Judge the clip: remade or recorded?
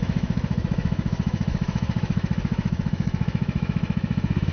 remade